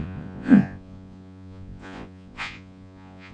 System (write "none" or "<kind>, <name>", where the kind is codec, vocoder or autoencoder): vocoder, Vocos